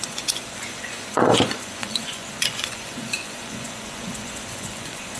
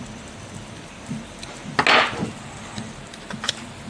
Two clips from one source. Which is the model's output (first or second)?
first